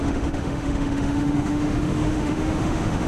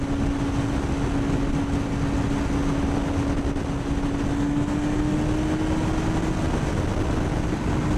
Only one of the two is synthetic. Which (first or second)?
first